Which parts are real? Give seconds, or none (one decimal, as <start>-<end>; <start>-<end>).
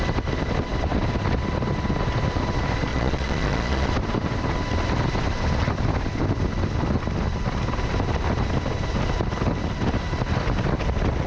0.0-2.9; 3.9-11.3